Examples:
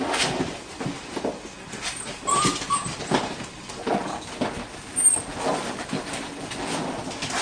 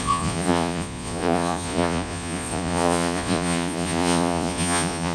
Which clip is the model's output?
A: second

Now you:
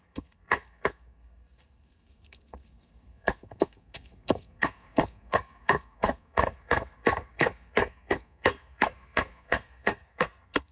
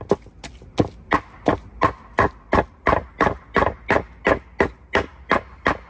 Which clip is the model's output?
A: first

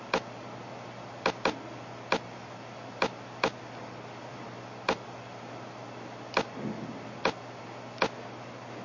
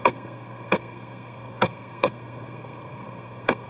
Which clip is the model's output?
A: second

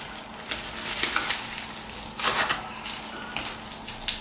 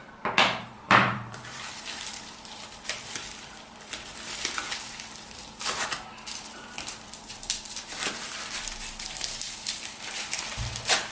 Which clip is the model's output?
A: second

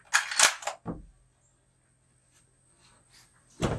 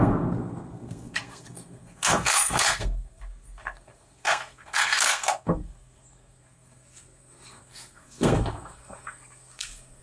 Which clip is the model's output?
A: second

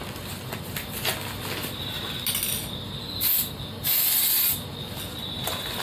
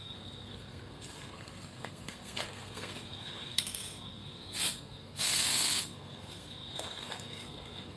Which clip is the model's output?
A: second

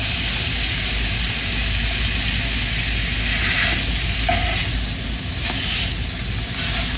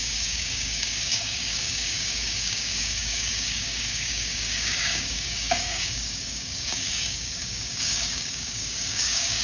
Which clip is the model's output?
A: second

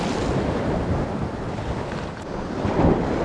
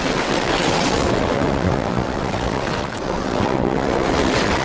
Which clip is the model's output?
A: second